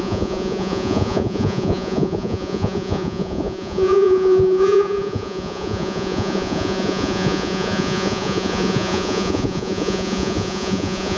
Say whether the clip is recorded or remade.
remade